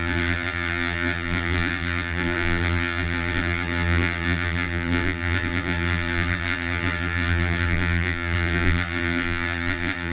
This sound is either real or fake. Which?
fake